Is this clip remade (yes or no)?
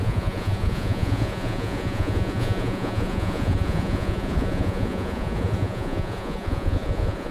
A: yes